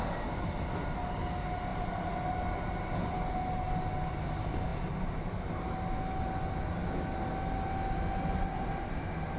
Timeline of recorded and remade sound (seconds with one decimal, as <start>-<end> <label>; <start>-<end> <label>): 0.0-9.4 recorded